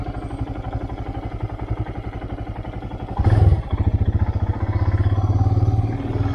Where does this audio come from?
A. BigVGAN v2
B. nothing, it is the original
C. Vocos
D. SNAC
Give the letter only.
B